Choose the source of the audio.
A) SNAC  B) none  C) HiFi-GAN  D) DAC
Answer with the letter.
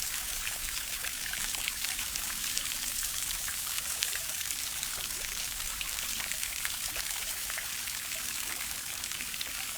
D